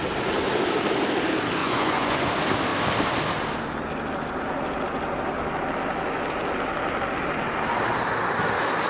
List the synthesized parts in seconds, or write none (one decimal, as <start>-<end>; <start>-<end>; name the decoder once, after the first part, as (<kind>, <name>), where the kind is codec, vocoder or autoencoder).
1.6-2.3 (vocoder, Vocos)